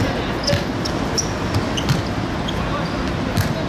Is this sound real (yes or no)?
yes